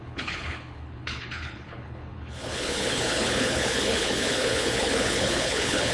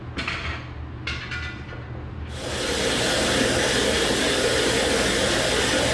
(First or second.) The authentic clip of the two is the second